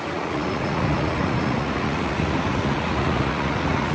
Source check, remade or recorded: remade